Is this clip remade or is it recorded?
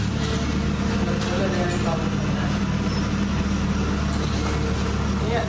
recorded